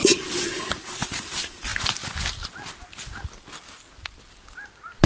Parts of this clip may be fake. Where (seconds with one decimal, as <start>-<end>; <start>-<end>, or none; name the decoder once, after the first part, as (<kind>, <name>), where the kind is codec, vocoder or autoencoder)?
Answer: none